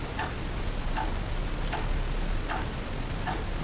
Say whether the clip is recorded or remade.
recorded